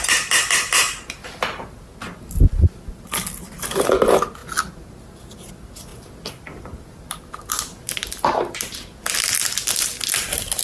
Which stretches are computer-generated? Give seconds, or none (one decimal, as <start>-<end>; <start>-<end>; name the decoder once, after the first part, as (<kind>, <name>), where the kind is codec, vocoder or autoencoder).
none